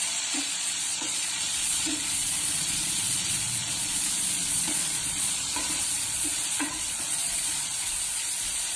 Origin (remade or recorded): remade